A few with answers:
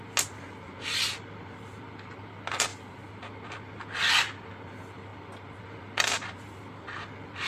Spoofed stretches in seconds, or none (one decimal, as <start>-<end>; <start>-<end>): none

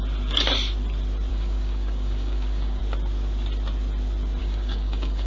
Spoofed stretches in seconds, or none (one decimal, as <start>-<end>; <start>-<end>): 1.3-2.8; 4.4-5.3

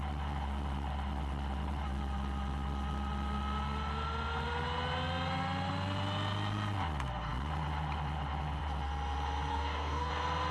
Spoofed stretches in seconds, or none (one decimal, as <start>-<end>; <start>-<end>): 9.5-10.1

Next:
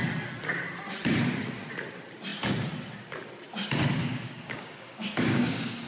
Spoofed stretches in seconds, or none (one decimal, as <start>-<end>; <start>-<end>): 4.0-5.9